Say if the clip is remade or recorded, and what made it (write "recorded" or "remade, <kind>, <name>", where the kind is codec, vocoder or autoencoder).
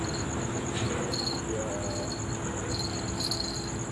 recorded